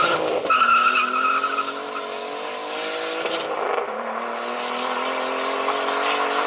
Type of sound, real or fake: real